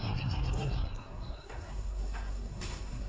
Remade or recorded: remade